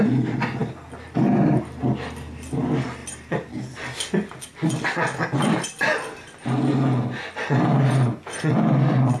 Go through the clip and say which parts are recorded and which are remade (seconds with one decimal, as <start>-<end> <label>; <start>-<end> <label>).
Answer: 0.0-9.2 recorded